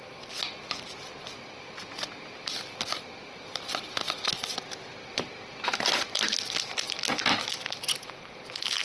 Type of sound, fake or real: real